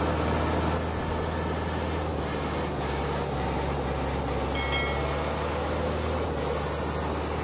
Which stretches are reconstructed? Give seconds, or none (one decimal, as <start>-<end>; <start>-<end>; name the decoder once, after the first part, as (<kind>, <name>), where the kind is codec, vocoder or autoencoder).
none